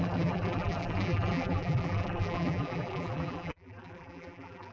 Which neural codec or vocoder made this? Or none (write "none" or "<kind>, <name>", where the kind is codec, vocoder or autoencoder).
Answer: vocoder, BigVGAN v2